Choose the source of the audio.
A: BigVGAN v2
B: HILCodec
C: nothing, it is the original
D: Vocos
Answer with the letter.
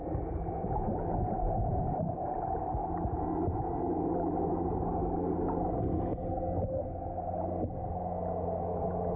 C